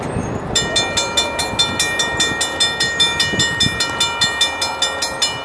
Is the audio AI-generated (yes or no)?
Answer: no